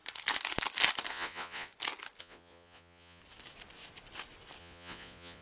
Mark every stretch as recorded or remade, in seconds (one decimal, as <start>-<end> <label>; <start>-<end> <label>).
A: 0.0-1.1 recorded; 1.1-1.7 remade; 1.7-2.2 recorded; 2.2-3.2 remade; 3.2-4.6 recorded; 4.6-5.4 remade